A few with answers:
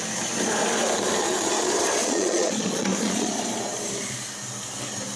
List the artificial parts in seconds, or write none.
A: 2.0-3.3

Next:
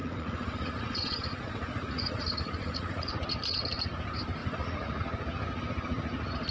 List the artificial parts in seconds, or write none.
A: 0.0-3.1; 4.4-5.0

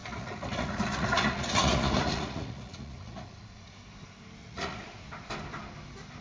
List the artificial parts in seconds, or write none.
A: 0.0-3.7; 4.4-5.0

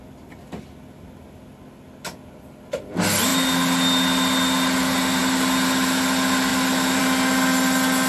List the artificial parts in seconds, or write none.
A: none

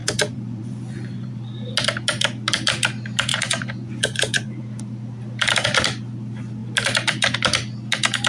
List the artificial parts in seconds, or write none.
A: 0.0-1.3; 3.3-4.6

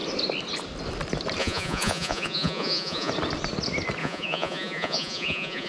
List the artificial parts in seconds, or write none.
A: 1.4-3.1; 4.0-5.7

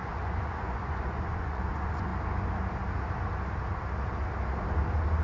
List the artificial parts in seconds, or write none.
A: 0.0-2.1